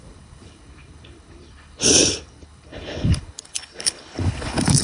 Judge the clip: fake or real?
fake